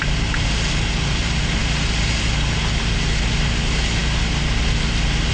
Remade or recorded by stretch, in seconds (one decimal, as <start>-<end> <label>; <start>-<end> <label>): 0.0-5.3 recorded